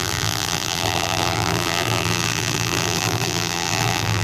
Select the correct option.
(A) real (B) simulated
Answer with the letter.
B